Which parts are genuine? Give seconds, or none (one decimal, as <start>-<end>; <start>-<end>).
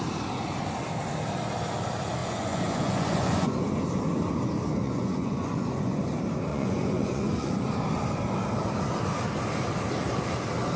0.0-2.2; 3.6-4.8; 6.0-6.5; 7.5-10.8